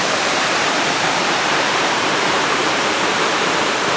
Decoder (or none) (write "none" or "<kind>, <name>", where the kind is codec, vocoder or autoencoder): vocoder, BigVGAN v2